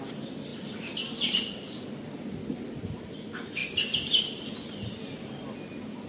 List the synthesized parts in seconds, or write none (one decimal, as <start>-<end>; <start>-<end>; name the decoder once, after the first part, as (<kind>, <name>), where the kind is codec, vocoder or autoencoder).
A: none